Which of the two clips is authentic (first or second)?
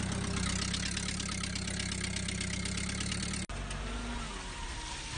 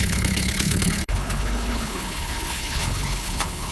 first